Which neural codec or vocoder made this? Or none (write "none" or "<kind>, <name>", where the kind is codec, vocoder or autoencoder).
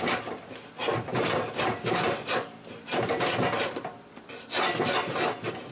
none